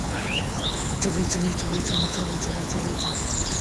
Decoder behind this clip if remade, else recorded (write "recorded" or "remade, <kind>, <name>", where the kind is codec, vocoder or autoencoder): remade, codec, HILCodec